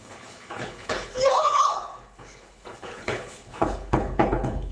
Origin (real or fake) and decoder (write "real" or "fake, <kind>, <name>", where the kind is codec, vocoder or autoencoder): fake, codec, HILCodec